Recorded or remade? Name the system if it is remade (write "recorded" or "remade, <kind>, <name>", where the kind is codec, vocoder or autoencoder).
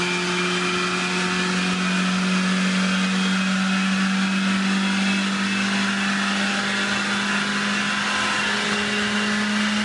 recorded